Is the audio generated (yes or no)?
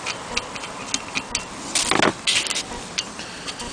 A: no